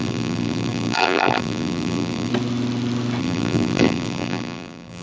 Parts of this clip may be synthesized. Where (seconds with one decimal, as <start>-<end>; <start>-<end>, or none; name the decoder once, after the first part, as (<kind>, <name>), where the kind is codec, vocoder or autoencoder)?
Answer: 0.0-2.3 (vocoder, BigVGAN v2); 3.2-5.0